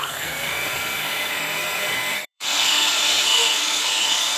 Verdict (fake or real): fake